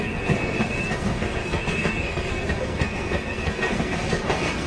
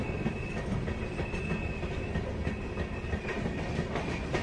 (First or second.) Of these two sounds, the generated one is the first